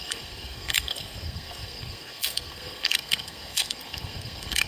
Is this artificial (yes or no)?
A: yes